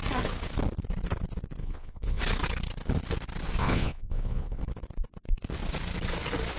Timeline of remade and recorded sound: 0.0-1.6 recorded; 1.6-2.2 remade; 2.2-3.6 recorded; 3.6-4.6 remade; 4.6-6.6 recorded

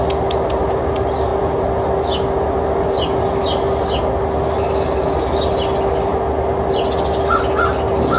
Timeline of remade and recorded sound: 0.0-8.2 recorded

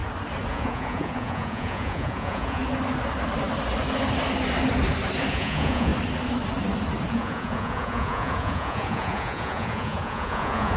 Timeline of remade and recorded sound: 0.0-0.5 recorded; 0.5-2.6 remade; 2.6-5.3 recorded; 5.3-5.9 remade; 5.9-7.1 recorded; 7.1-10.8 remade

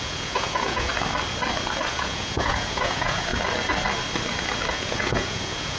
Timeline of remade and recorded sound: 0.0-0.9 remade; 0.9-1.9 recorded; 1.9-3.3 remade; 3.3-4.7 recorded; 4.7-5.8 remade